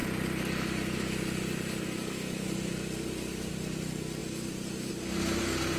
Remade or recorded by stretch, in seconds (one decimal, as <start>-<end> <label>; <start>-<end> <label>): 0.0-3.5 remade; 3.5-4.2 recorded; 4.2-4.9 remade; 4.9-5.8 recorded